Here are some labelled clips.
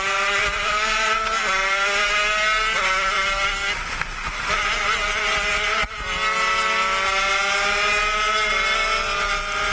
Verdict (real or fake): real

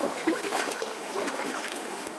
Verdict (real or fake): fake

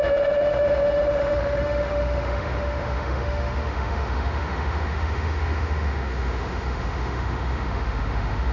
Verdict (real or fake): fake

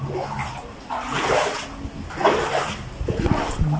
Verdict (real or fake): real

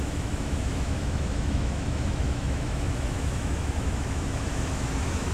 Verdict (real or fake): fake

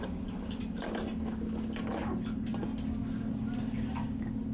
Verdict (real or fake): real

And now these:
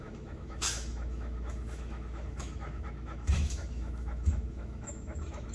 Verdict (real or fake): fake